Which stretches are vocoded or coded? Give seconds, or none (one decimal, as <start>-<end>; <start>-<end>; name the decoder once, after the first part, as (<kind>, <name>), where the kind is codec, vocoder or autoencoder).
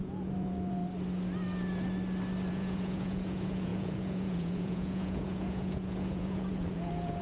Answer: 0.0-0.8 (vocoder, Vocos); 2.5-7.2